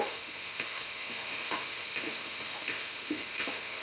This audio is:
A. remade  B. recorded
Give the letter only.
A